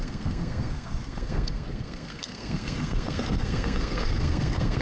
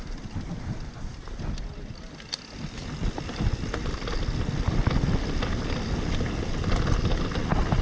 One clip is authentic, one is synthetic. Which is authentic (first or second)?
second